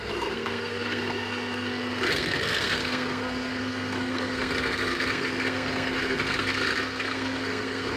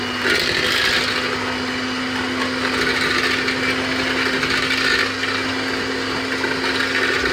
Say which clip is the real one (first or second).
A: second